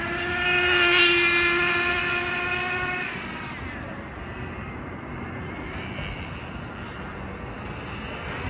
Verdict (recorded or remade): recorded